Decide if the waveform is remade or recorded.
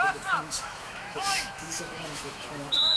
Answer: remade